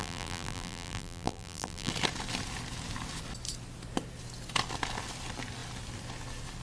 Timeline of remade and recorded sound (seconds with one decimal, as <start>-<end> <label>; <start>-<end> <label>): 0.0-1.9 remade; 1.9-6.6 recorded